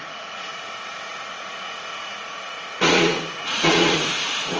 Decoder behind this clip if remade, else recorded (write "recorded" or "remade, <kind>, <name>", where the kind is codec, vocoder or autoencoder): remade, vocoder, Vocos